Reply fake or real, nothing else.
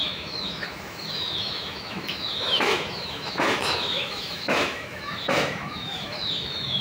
fake